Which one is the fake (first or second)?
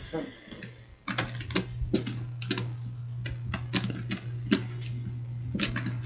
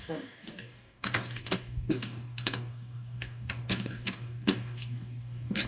second